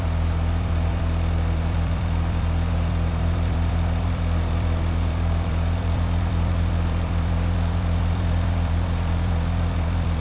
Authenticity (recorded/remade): remade